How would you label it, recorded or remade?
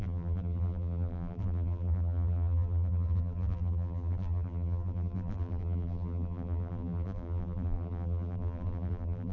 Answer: remade